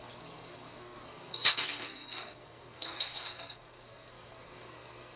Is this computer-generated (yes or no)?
yes